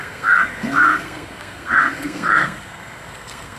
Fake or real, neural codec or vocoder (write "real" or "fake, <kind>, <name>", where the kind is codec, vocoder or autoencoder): fake, codec, SNAC